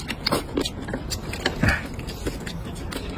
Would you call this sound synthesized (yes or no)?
no